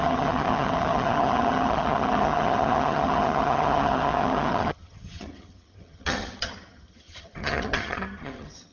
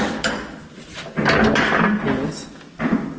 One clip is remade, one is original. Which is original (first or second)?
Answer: second